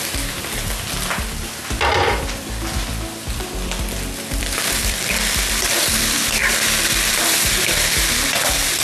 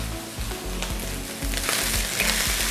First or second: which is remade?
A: first